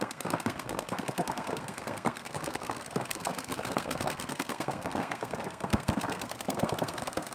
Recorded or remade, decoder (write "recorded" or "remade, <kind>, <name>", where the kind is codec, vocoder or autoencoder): remade, codec, SNAC